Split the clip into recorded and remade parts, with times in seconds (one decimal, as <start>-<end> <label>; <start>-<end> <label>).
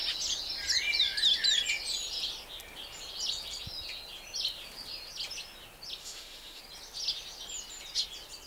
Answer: 0.0-6.0 recorded; 6.0-6.6 remade; 6.6-8.5 recorded